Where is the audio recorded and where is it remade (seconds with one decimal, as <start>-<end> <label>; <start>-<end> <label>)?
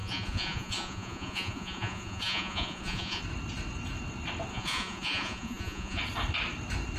0.0-3.2 remade; 3.2-4.5 recorded; 4.5-6.0 remade; 6.0-7.0 recorded